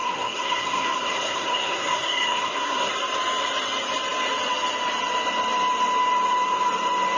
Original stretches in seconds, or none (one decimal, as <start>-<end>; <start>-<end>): 2.9-7.2